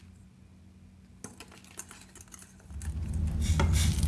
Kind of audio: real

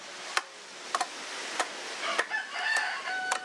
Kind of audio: real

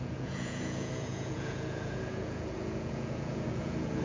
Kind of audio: fake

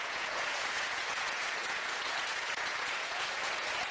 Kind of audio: fake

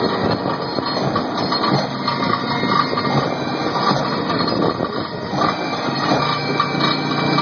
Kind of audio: real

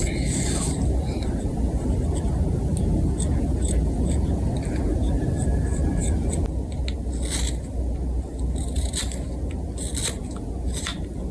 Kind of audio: real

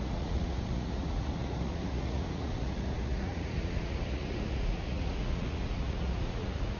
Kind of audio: fake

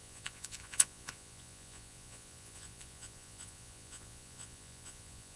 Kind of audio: fake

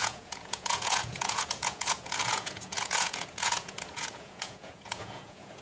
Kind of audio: fake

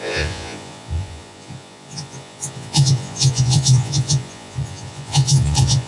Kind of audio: fake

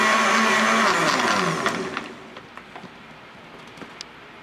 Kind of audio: real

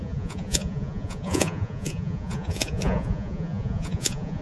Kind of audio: fake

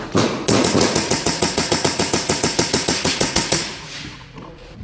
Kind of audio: fake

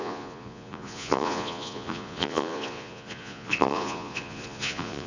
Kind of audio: fake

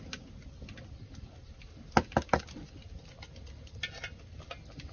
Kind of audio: real